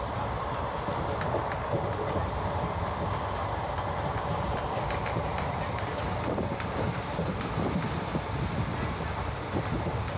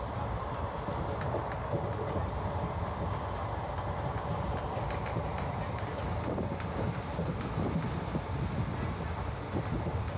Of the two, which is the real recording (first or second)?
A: second